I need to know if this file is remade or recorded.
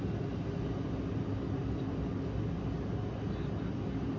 recorded